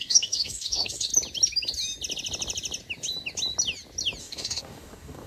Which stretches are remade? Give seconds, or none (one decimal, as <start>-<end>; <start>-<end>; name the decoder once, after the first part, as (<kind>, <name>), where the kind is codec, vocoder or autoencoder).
0.0-1.1 (codec, DAC); 4.2-5.3